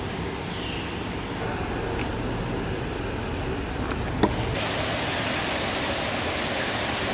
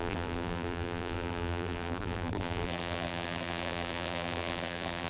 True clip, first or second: first